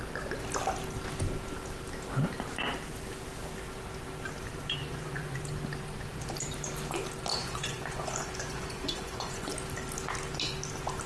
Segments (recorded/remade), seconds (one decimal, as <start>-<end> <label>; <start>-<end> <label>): 0.0-4.8 recorded; 4.8-5.4 remade; 5.4-7.3 recorded; 7.3-9.5 remade; 9.5-11.1 recorded